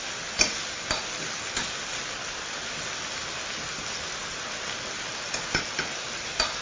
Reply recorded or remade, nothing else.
recorded